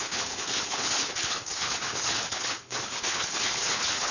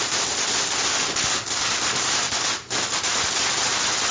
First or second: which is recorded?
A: second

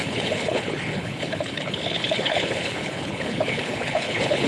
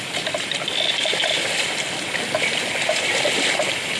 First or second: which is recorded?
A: second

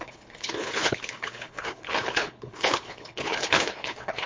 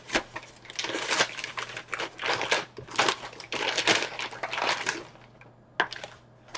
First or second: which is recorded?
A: second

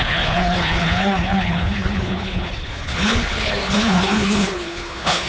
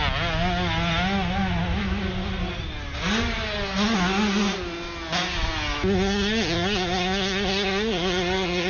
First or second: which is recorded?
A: second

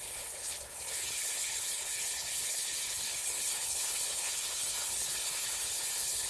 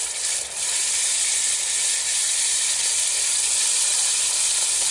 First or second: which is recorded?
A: second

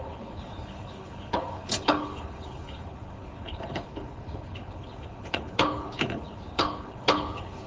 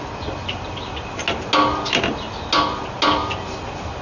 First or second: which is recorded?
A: second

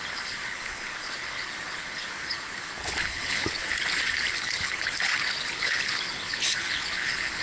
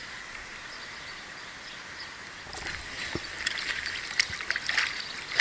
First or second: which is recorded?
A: second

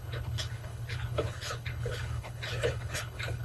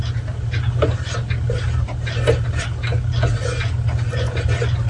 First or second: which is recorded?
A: second